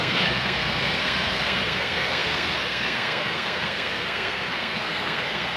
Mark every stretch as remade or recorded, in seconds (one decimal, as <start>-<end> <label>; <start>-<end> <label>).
0.0-5.6 remade